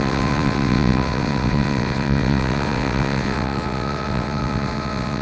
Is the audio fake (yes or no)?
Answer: yes